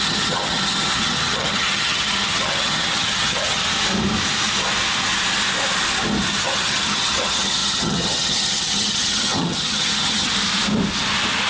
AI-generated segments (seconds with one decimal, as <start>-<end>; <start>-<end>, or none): 0.0-3.6; 6.4-10.3